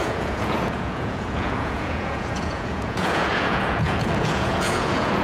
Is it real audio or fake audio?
fake